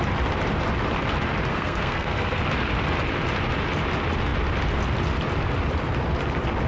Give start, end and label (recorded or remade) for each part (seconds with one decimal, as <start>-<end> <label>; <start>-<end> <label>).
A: 0.0-1.5 recorded; 1.5-2.4 remade; 2.4-6.7 recorded